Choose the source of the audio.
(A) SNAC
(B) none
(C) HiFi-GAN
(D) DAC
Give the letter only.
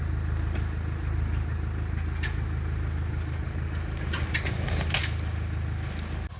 B